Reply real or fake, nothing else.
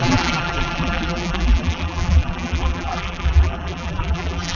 fake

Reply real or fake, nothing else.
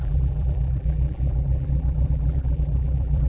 fake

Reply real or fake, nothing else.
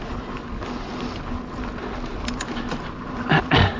real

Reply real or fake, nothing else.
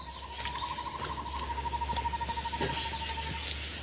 real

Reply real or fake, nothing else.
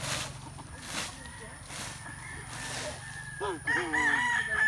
real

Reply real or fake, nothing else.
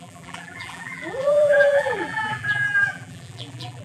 fake